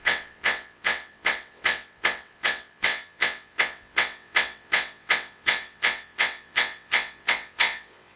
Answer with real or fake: fake